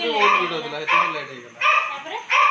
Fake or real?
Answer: real